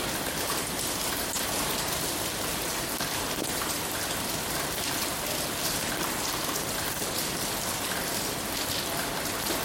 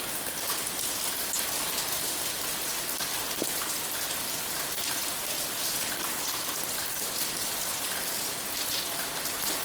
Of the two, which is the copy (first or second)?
first